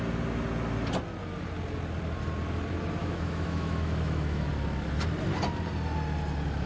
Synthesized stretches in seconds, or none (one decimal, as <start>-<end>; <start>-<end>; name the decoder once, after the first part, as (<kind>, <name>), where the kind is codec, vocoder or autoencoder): 3.0-4.5 (autoencoder, DAC-VAE)